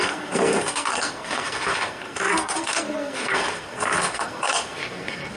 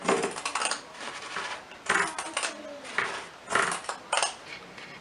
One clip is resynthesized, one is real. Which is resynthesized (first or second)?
first